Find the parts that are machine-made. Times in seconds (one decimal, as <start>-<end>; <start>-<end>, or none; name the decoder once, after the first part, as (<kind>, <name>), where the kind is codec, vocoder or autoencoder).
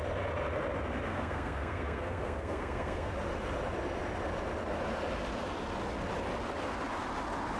1.1-3.1 (codec, SNAC)